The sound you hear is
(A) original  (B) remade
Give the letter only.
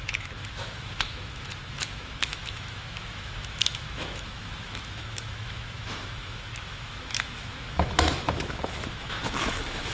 B